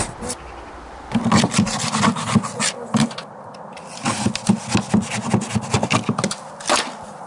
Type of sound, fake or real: real